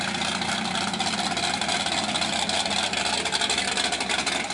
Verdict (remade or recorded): recorded